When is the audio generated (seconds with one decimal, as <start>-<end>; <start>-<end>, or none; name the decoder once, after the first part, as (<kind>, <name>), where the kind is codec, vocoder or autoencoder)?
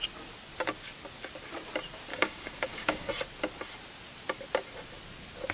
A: 2.1-3.1 (codec, DAC)